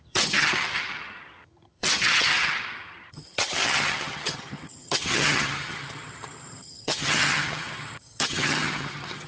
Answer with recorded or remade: remade